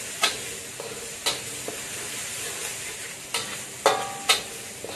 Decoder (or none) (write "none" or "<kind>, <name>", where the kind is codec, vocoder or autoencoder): none